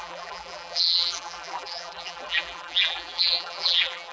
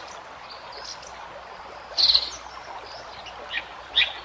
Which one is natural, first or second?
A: second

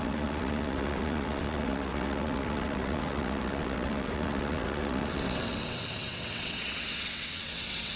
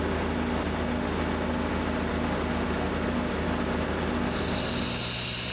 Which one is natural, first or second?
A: second